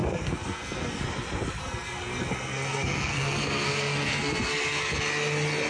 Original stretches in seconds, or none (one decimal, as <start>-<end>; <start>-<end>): 1.0-1.6; 5.0-5.7